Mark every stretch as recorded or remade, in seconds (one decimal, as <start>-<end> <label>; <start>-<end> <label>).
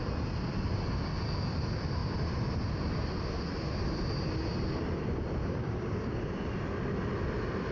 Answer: 0.0-5.4 recorded; 5.4-6.2 remade; 6.2-7.7 recorded